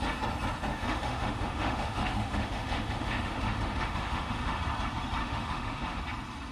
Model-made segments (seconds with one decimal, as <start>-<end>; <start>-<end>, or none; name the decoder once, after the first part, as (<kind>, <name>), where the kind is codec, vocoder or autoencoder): 0.7-4.6 (autoencoder, DAC-VAE); 5.2-6.0